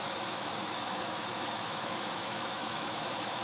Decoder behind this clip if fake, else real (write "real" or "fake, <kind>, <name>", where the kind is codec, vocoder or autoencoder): fake, autoencoder, DAC-VAE